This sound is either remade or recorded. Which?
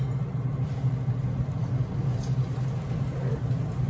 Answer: recorded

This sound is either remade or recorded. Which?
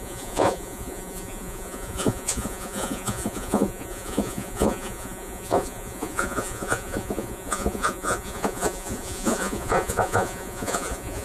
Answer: remade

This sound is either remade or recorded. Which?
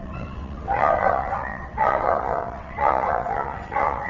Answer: remade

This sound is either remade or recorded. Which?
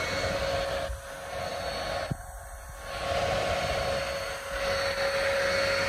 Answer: recorded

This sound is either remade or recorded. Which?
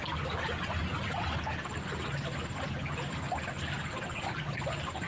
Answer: recorded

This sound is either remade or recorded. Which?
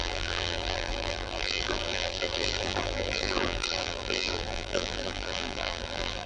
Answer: remade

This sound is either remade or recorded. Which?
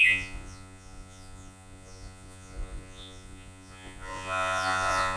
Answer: remade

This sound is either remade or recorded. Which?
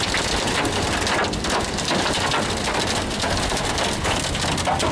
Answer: recorded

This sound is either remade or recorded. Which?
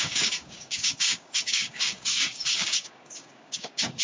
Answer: remade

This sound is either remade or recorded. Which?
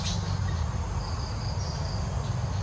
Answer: recorded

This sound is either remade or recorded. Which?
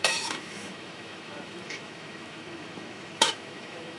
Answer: remade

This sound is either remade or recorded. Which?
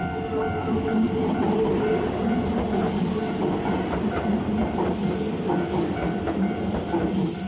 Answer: recorded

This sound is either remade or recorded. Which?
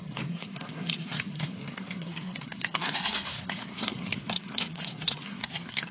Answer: remade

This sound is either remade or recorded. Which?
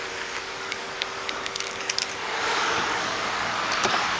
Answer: remade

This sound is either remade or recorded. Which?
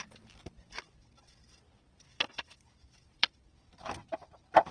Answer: remade